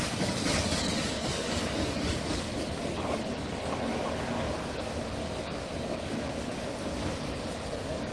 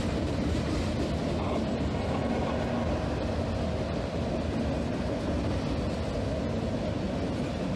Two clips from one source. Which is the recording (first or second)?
second